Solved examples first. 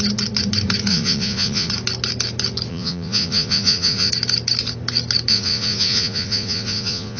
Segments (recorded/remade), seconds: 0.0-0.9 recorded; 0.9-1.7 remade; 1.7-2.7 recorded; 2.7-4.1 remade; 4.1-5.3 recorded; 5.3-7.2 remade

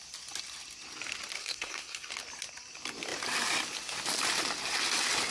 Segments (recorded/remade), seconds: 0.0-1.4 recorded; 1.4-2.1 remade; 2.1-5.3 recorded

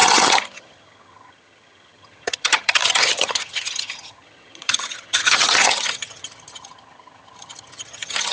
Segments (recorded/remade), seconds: 0.0-8.3 remade

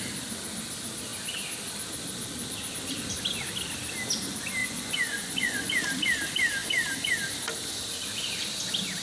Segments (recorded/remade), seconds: 0.0-4.6 recorded; 4.6-5.7 remade; 5.7-9.0 recorded

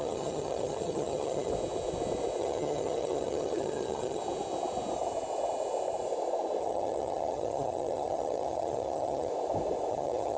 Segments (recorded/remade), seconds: 0.0-1.5 remade; 1.5-2.4 recorded; 2.4-4.2 remade; 4.2-6.6 recorded; 6.6-9.3 remade; 9.3-9.9 recorded; 9.9-10.4 remade

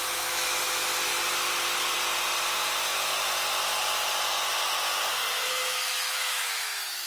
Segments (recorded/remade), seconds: 0.0-1.1 remade; 1.1-5.4 recorded; 5.4-7.1 remade

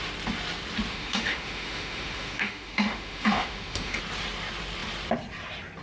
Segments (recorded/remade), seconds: 0.0-0.9 recorded; 0.9-4.0 remade; 4.0-5.8 recorded

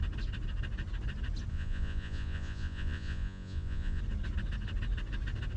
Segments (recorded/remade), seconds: 0.0-1.5 recorded; 1.5-4.0 remade; 4.0-5.6 recorded